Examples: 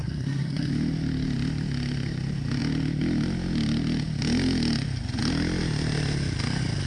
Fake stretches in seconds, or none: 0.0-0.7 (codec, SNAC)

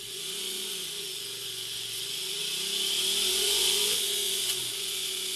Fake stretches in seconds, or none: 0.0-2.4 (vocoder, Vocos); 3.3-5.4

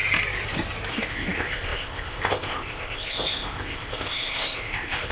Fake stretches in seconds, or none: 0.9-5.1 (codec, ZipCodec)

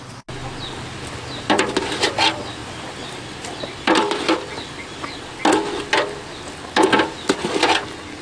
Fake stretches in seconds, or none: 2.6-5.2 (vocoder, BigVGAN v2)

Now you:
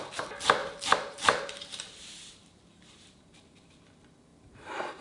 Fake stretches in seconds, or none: 0.6-3.6 (vocoder, BigVGAN v2); 4.3-5.0

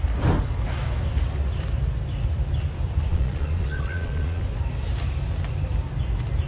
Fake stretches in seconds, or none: 3.1-4.4 (vocoder, Vocos)

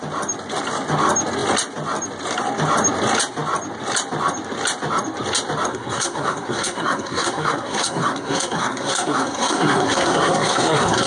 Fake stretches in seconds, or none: 5.7-11.1 (codec, SNAC)